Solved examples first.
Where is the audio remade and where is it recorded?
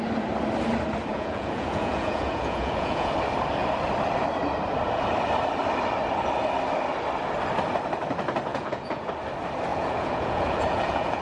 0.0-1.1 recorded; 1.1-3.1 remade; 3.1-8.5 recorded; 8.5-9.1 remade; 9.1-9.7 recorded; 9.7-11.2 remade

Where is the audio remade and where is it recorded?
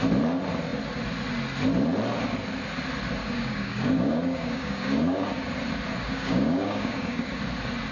0.0-3.2 recorded; 3.2-5.3 remade; 5.3-5.9 recorded; 5.9-7.3 remade; 7.3-7.9 recorded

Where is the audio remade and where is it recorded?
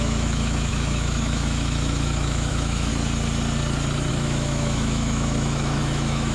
0.0-2.9 remade; 2.9-4.1 recorded; 4.1-6.3 remade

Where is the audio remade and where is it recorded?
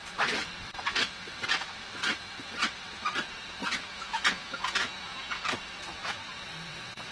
0.0-3.9 remade; 3.9-5.4 recorded; 5.4-7.1 remade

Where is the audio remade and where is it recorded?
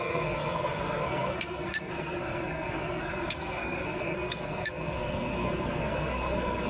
0.0-6.7 remade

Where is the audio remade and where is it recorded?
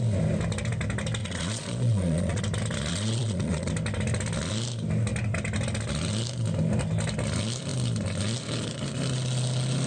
0.0-1.2 recorded; 1.2-2.4 remade; 2.4-2.9 recorded; 2.9-3.7 remade; 3.7-9.9 recorded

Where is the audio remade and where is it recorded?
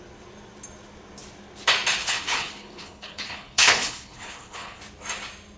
0.0-2.0 recorded; 2.0-4.8 remade; 4.8-5.6 recorded